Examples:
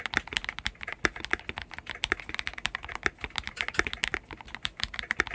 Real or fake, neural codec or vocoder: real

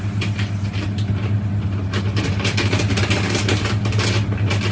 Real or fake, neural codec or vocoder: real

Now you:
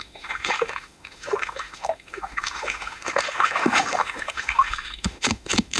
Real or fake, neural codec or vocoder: fake, autoencoder, DAC-VAE